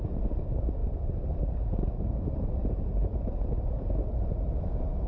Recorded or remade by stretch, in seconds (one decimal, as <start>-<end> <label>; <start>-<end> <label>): 0.0-0.8 remade; 0.8-1.3 recorded; 1.3-5.1 remade